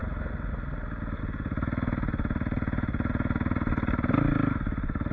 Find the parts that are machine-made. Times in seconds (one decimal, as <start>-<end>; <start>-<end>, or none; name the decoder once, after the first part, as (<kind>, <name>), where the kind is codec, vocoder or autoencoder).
none